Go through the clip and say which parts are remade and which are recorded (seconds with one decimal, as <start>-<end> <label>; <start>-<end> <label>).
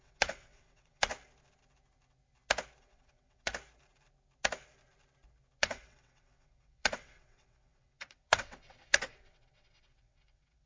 0.0-1.1 remade; 1.1-2.8 recorded; 2.8-3.5 remade; 3.5-5.6 recorded; 5.6-10.7 remade